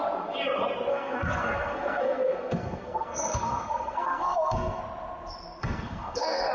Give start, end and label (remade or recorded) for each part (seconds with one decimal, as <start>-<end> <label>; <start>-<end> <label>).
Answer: 0.0-0.9 recorded; 0.9-4.8 remade; 4.8-5.6 recorded; 5.6-6.5 remade